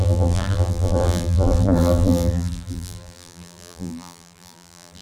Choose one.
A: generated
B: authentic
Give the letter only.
A